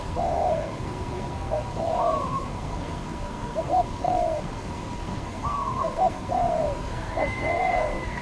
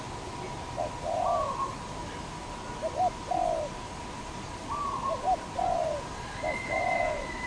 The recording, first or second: second